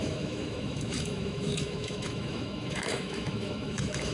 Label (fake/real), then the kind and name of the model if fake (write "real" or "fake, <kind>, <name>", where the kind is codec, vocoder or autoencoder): fake, autoencoder, DAC-VAE